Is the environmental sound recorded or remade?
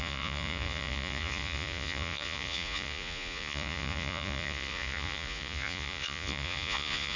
remade